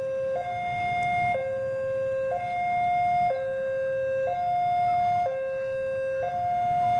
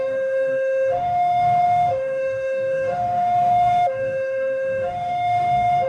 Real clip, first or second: first